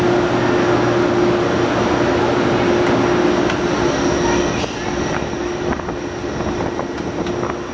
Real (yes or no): yes